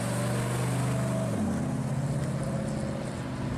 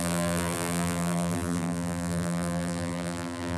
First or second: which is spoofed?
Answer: second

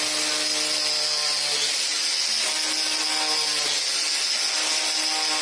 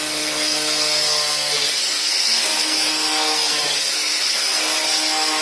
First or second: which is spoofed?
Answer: second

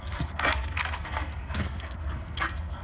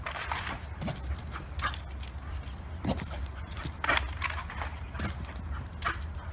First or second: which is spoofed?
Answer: first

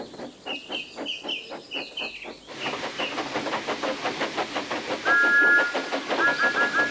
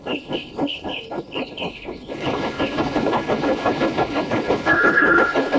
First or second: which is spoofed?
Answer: second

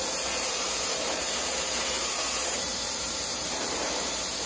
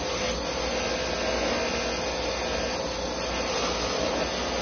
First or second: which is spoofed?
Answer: first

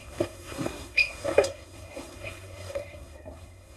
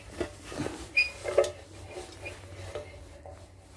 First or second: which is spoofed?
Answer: first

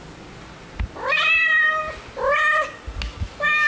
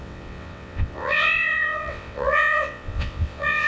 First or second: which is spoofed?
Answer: second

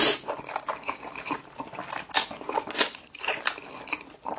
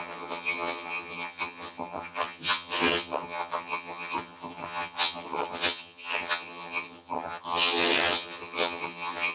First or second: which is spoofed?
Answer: second